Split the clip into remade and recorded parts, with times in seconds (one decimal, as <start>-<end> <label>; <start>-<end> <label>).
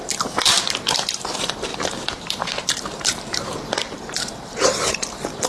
0.0-5.5 remade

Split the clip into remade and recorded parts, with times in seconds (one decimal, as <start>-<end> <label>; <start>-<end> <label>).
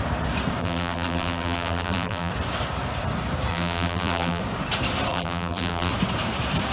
0.0-0.6 recorded; 0.6-2.3 remade; 2.3-3.5 recorded; 3.5-4.4 remade; 4.4-5.1 recorded; 5.1-5.9 remade; 5.9-6.7 recorded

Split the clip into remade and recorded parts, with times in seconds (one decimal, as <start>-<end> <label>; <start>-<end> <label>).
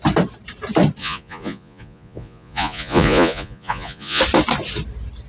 0.0-1.0 recorded; 1.0-4.2 remade; 4.2-5.3 recorded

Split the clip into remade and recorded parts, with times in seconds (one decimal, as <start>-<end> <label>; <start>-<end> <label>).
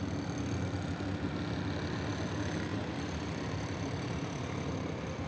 0.0-2.7 recorded; 2.7-4.7 remade; 4.7-5.3 recorded